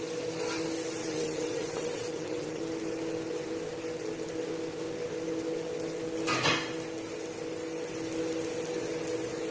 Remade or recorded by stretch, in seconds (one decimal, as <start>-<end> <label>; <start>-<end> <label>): 0.0-1.0 recorded; 1.0-2.6 remade; 2.6-9.5 recorded